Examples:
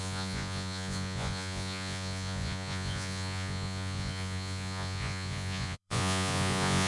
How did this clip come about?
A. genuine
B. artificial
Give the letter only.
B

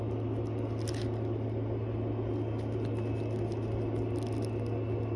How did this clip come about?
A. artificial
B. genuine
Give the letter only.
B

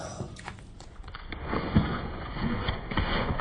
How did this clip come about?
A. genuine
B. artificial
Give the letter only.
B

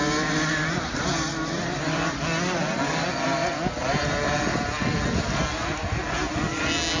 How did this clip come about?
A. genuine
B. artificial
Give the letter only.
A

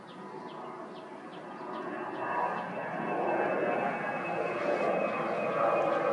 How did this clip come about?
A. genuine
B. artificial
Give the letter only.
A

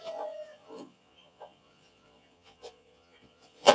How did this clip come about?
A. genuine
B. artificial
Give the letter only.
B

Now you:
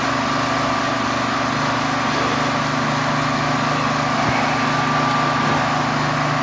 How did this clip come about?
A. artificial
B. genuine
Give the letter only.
B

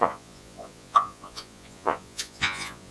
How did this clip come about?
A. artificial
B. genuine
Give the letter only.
A